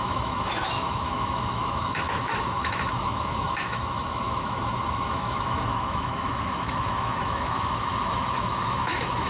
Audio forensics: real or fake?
fake